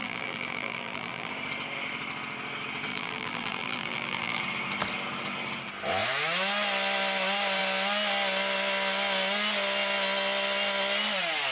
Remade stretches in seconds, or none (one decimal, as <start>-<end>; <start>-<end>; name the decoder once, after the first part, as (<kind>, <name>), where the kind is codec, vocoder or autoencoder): 0.0-1.3 (vocoder, BigVGAN v2); 2.9-4.4